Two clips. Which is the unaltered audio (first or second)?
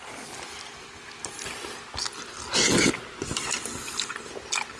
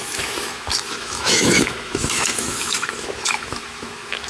first